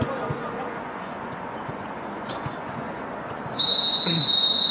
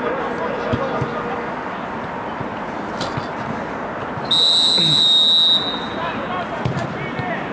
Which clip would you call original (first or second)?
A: second